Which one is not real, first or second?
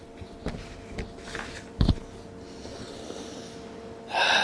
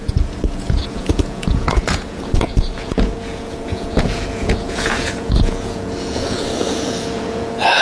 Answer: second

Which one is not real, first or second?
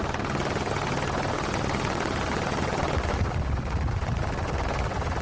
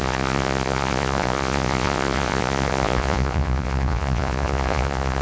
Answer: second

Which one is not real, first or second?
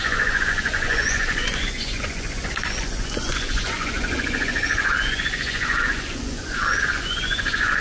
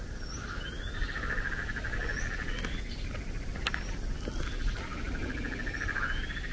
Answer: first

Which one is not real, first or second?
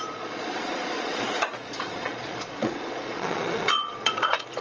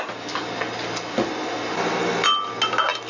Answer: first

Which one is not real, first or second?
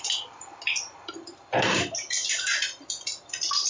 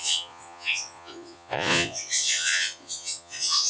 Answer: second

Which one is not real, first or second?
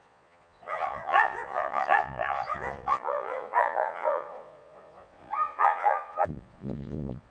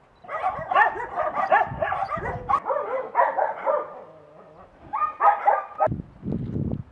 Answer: first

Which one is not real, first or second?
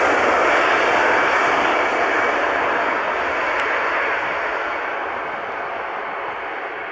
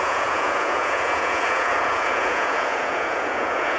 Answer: second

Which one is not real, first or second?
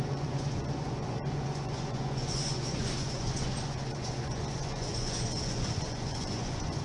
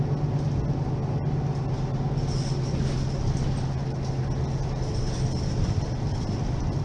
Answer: first